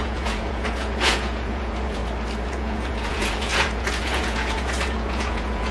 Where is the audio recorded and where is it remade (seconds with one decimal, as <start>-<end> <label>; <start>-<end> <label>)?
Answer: 0.0-2.0 remade; 2.0-2.5 recorded; 2.5-5.7 remade